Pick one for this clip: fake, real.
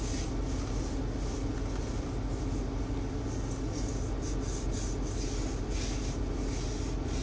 real